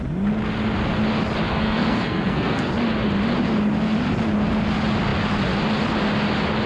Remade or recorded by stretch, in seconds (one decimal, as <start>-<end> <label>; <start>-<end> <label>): 0.0-1.5 recorded; 1.5-2.7 remade; 2.7-6.7 recorded